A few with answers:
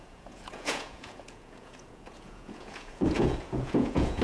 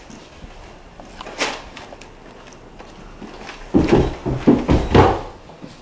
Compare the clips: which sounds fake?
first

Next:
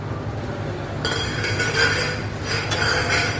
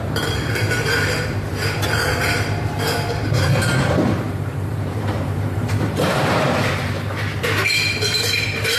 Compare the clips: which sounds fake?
second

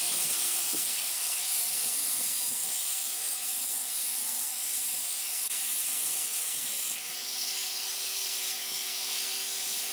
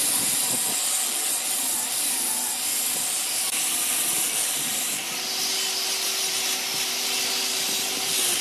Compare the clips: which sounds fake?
first